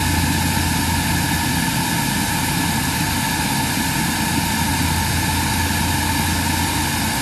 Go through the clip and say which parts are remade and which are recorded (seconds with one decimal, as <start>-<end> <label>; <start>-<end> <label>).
0.0-4.7 recorded; 4.7-5.3 remade; 5.3-7.2 recorded